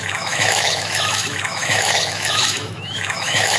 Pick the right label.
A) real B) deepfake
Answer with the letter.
B